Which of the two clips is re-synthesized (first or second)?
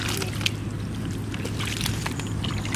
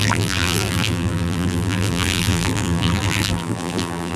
second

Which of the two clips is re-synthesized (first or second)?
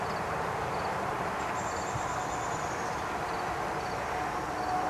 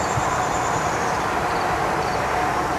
second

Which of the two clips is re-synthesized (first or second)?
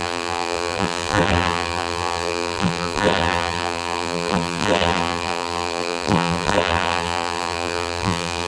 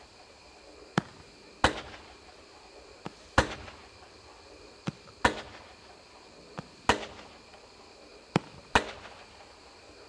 first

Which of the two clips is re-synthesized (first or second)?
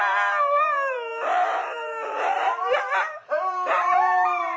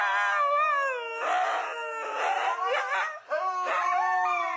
first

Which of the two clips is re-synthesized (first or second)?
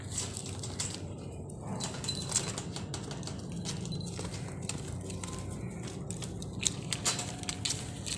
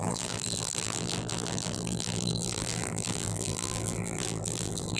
second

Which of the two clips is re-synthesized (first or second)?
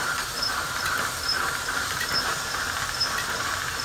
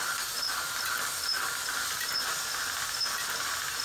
first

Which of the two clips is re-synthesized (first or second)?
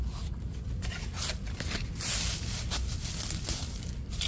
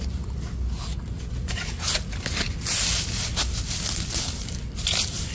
first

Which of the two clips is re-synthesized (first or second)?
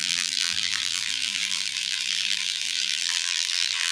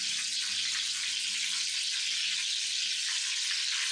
first